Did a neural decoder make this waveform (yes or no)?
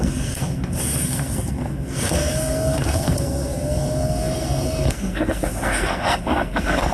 yes